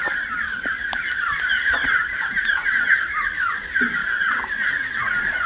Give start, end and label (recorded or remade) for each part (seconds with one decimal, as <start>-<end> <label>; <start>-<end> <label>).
0.0-4.0 remade; 4.0-5.0 recorded; 5.0-5.5 remade